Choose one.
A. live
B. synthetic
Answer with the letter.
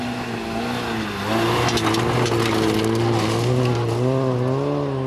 A